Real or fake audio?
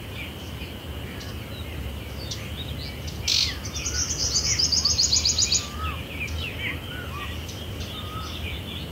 real